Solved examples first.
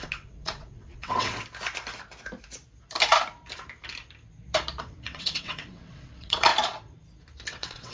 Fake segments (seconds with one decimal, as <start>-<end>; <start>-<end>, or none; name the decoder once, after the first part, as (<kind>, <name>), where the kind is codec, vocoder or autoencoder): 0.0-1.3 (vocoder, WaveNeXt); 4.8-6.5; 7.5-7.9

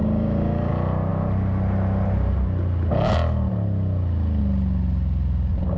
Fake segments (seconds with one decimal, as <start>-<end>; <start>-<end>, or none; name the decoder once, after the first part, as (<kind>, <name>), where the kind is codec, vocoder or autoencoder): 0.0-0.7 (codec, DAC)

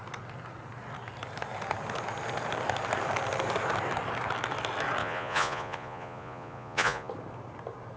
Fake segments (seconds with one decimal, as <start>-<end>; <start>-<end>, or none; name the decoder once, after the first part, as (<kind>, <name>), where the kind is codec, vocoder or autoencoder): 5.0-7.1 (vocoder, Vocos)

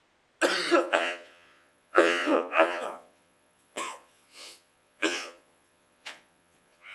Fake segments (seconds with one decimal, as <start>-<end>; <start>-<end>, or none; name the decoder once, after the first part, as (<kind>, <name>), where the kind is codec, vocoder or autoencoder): 0.8-6.9 (vocoder, Vocos)

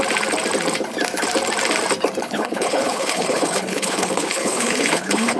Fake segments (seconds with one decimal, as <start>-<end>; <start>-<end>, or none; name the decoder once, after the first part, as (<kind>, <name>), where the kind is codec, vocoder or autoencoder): 2.2-5.4 (codec, HILCodec)

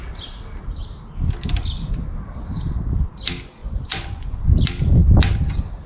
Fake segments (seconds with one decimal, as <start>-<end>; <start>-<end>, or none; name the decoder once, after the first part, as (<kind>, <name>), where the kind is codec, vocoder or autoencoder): 3.6-4.4 (vocoder, Vocos)

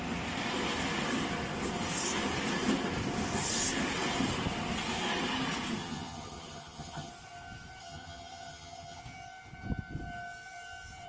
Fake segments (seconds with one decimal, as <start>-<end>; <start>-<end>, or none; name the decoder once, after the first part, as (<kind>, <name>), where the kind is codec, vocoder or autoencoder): 5.8-7.1 (vocoder, HiFi-GAN); 7.8-9.0